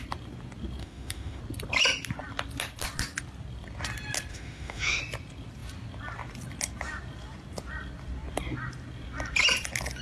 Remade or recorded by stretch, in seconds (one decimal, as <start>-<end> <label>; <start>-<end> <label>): 0.0-0.8 recorded; 0.8-1.4 remade; 1.4-4.3 recorded; 4.3-5.0 remade; 5.0-10.0 recorded